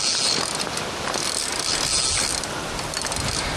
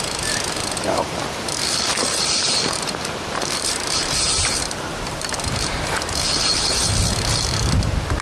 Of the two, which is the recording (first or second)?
first